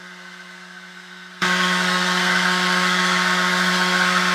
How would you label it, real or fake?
fake